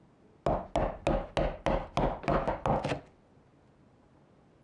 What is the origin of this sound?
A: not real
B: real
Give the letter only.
B